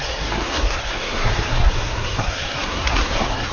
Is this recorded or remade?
remade